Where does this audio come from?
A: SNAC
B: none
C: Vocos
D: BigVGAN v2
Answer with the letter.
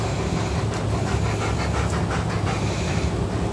B